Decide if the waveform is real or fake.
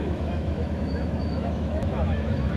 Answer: fake